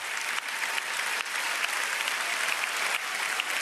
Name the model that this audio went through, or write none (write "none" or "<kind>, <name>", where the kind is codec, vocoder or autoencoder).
none